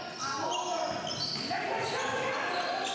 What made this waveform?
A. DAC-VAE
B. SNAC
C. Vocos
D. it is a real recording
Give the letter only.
D